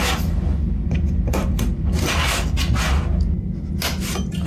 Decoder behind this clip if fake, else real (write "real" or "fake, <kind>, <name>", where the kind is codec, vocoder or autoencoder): real